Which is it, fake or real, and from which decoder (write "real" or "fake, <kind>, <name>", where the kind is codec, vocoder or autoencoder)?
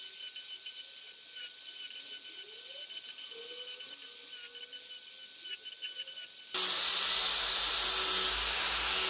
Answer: real